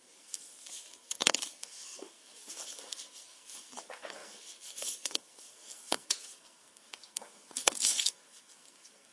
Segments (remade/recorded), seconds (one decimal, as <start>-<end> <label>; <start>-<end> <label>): 0.0-9.1 remade